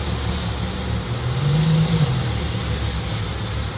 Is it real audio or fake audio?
real